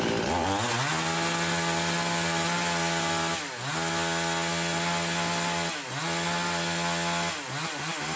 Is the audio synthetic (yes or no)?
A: no